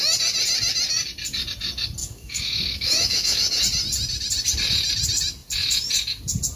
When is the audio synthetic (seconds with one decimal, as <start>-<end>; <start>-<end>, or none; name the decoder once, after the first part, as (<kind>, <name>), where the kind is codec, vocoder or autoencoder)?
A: 2.0-3.6 (autoencoder, DAC-VAE)